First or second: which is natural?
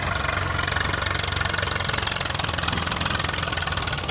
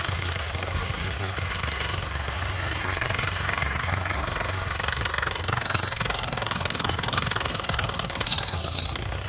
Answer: first